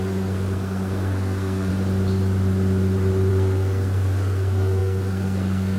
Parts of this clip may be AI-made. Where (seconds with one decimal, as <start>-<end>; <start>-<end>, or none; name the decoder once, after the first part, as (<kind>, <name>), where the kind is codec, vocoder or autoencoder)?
0.0-1.7 (codec, SNAC); 3.3-5.8